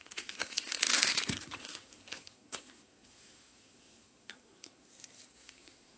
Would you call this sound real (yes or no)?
no